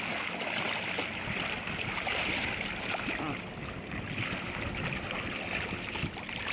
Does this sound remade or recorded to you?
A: recorded